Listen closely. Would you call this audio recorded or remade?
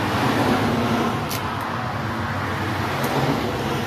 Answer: recorded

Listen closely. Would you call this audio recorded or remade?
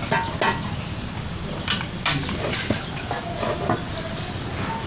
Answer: recorded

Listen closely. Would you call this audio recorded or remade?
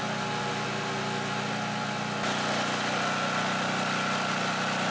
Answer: recorded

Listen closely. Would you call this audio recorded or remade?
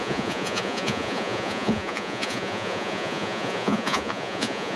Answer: remade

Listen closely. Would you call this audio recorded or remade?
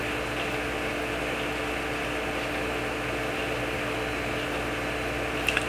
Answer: recorded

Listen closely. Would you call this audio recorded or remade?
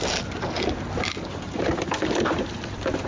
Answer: recorded